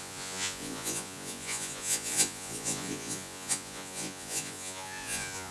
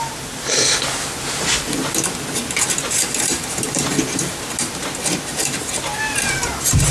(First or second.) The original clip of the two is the second